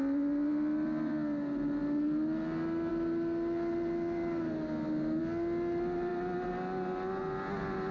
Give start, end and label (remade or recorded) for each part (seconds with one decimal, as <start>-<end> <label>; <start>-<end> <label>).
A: 0.0-7.9 recorded